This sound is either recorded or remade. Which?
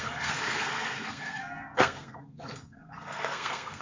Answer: remade